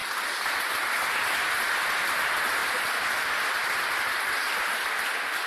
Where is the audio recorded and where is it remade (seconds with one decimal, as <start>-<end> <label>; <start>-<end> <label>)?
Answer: 0.0-2.6 recorded; 2.6-4.9 remade; 4.9-5.5 recorded